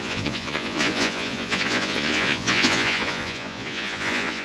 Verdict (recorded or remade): remade